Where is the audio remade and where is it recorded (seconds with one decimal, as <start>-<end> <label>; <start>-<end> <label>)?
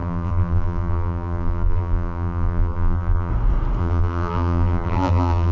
0.0-3.3 remade; 3.3-3.8 recorded; 3.8-5.5 remade